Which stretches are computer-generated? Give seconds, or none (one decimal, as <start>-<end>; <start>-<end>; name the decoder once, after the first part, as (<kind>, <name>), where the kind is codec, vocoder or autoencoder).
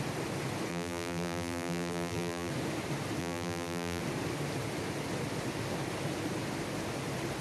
0.7-2.5 (vocoder, BigVGAN v2); 3.2-4.0